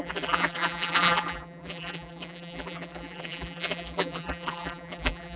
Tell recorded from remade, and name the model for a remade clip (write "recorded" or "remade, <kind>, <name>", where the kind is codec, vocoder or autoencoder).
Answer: remade, vocoder, BigVGAN v2